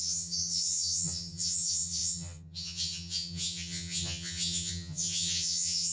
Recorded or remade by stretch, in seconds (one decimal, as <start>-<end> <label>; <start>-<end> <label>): 0.0-5.9 remade